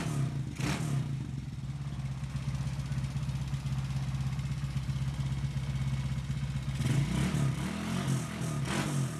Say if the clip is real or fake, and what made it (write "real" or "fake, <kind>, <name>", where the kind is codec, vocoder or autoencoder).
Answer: real